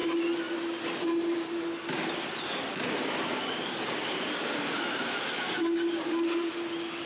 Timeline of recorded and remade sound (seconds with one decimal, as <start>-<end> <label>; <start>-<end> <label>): 0.0-3.0 recorded; 3.0-6.5 remade; 6.5-7.1 recorded